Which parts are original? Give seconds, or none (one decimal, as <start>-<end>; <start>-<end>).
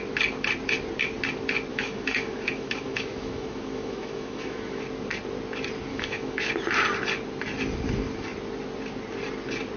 0.0-1.7; 4.8-5.9; 6.5-9.8